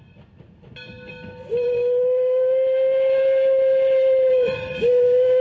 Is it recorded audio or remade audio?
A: recorded